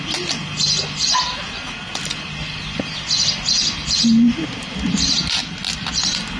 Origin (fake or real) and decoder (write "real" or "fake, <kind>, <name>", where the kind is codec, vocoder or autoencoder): real